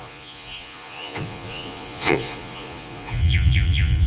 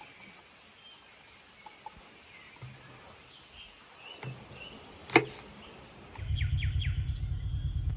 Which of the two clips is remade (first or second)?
first